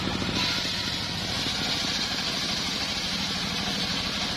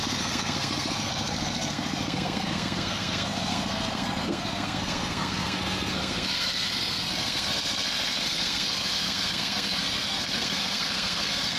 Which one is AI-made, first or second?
second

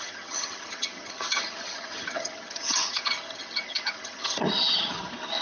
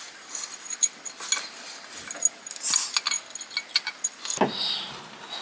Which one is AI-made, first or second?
first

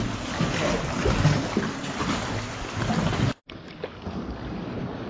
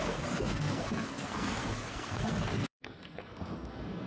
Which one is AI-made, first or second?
second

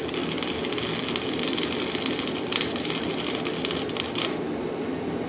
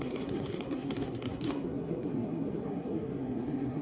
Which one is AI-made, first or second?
second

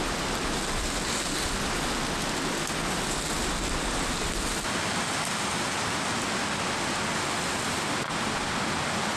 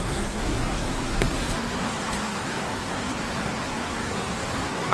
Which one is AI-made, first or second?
second